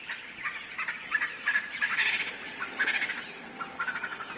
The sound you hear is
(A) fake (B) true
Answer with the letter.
B